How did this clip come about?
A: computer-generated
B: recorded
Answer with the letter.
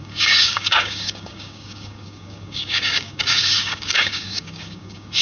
A